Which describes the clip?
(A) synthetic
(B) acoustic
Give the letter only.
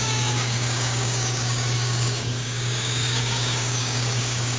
A